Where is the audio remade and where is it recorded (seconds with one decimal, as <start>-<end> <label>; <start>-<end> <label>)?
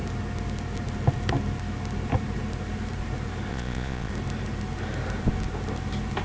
0.0-3.5 recorded; 3.5-4.1 remade; 4.1-6.2 recorded